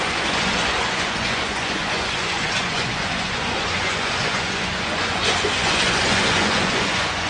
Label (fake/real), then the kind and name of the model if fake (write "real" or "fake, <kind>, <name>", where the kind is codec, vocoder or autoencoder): fake, vocoder, Vocos